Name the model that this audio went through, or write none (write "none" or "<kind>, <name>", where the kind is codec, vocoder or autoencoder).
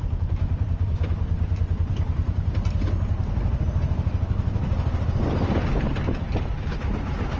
vocoder, BigVGAN v2